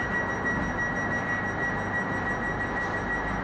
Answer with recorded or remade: recorded